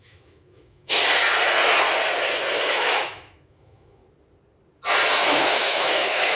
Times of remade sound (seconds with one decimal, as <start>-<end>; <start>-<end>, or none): 0.0-1.0; 2.6-4.0; 5.2-6.3